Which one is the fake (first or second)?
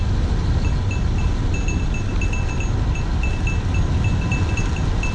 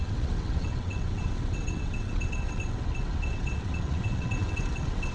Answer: second